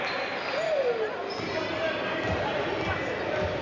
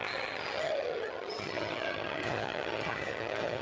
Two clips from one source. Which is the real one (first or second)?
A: first